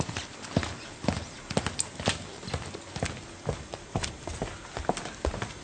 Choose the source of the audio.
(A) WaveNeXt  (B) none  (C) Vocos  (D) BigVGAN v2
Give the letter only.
B